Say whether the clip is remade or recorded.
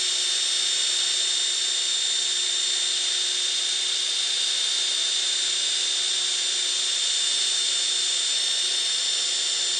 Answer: recorded